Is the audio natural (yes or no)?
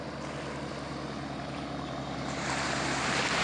yes